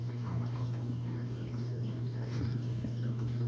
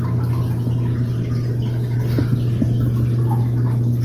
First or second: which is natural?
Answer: second